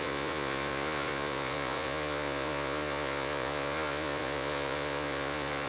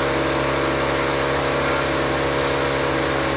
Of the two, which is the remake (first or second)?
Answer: first